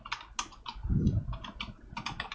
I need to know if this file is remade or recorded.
recorded